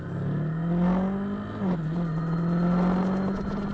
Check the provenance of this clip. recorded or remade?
recorded